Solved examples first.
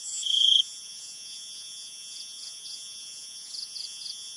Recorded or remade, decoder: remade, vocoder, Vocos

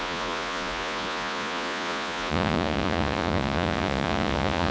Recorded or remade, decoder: remade, vocoder, Vocos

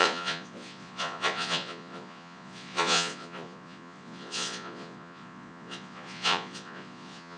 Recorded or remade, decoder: remade, vocoder, Vocos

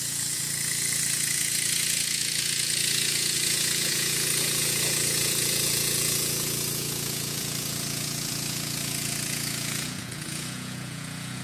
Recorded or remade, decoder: remade, vocoder, Vocos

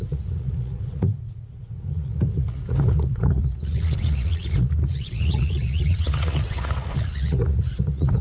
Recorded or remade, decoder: remade, vocoder, Vocos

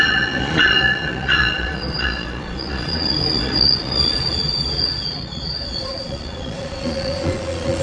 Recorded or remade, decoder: remade, vocoder, Vocos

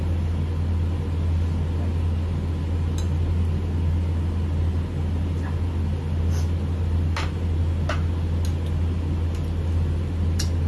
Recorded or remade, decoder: recorded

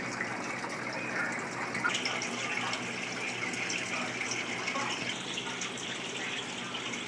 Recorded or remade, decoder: recorded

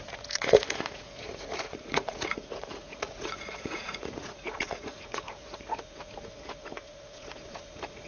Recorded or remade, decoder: remade, vocoder, Vocos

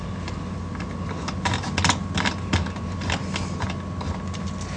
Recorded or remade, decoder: recorded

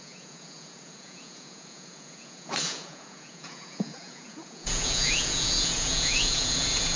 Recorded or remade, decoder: remade, vocoder, Vocos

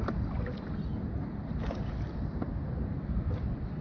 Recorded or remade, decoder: recorded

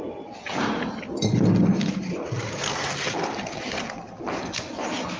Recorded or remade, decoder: recorded